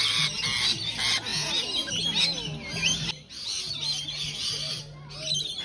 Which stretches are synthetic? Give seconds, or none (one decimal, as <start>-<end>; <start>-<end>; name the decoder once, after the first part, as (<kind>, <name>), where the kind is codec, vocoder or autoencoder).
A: none

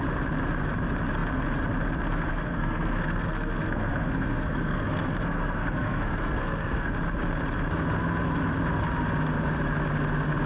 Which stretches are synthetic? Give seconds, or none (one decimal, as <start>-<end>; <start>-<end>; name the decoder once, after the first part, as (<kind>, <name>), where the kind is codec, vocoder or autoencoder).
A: 2.3-6.9 (codec, SNAC)

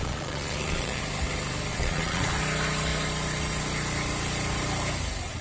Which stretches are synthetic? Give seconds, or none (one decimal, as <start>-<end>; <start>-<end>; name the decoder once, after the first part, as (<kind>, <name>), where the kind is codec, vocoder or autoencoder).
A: 0.0-1.0 (vocoder, Vocos); 1.7-2.3